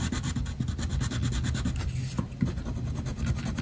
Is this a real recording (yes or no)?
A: yes